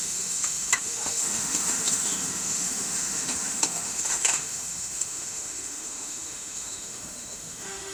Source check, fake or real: fake